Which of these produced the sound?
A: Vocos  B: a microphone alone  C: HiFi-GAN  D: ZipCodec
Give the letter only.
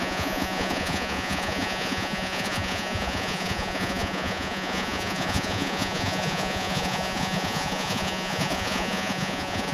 A